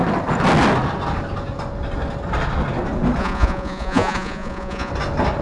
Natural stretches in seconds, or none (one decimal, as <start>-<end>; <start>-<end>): 0.0-3.2; 4.9-5.4